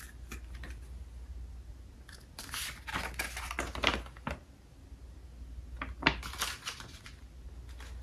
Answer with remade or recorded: recorded